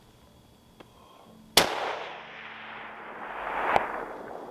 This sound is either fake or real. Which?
real